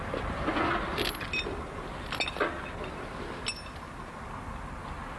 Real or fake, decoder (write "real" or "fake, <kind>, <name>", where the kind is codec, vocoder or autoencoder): real